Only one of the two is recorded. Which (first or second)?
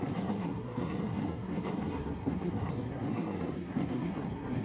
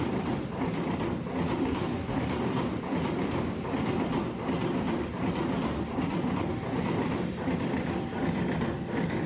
second